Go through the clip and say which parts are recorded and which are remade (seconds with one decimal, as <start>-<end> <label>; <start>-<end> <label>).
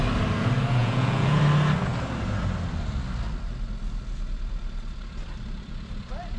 0.0-0.8 recorded; 0.8-1.4 remade; 1.4-6.4 recorded